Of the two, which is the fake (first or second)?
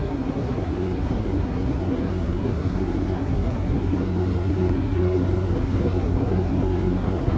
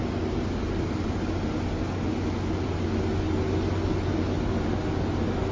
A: first